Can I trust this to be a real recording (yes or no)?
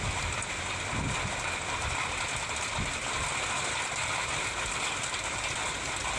yes